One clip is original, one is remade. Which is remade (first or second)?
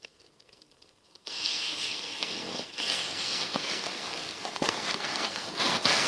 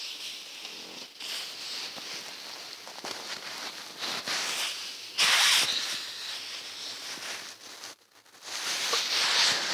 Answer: first